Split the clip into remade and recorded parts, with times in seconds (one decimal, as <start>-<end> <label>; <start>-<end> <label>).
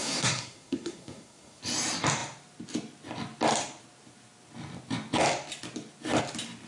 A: 0.0-1.6 remade; 1.6-6.7 recorded